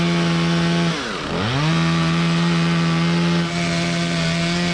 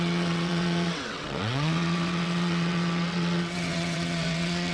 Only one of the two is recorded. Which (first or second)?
first